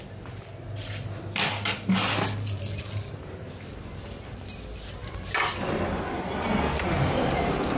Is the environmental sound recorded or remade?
recorded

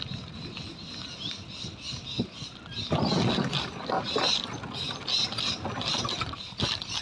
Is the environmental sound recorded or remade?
recorded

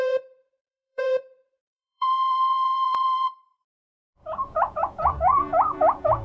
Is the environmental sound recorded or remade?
remade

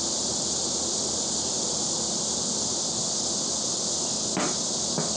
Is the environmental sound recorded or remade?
recorded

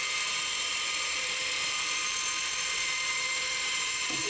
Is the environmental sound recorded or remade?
remade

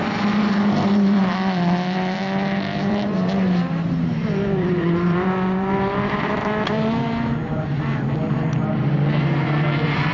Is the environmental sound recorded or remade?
remade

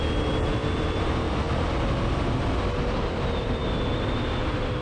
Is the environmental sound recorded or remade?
recorded